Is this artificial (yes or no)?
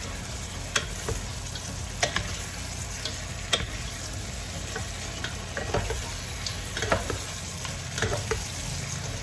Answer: no